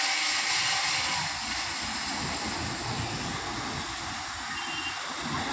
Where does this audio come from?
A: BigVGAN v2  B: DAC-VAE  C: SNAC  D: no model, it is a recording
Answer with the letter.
D